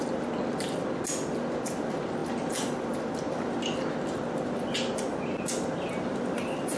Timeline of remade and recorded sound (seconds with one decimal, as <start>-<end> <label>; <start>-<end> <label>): 0.0-6.8 recorded